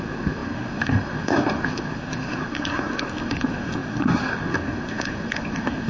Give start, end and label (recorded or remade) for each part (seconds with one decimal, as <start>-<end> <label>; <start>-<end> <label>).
0.0-5.9 remade